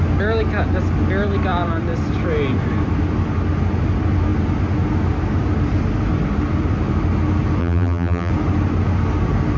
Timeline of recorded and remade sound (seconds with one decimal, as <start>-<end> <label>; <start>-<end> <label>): 0.0-7.6 recorded; 7.6-8.3 remade; 8.3-9.6 recorded